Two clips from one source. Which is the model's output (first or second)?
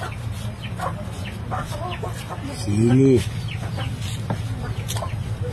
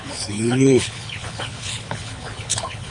second